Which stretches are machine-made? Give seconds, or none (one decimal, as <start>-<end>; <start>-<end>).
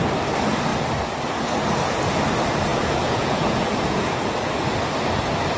2.7-4.5